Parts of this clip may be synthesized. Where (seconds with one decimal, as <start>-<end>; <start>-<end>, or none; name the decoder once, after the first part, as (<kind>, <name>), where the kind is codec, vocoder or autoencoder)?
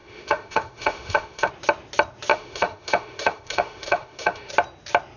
0.0-1.5 (autoencoder, DAC-VAE); 2.3-4.5